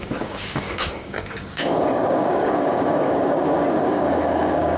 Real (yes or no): no